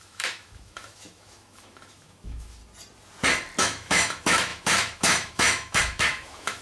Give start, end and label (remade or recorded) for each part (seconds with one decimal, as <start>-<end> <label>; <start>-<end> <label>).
0.0-2.6 remade; 2.6-3.6 recorded; 3.6-6.6 remade